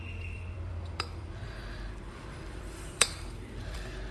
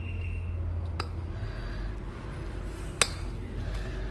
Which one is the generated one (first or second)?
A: first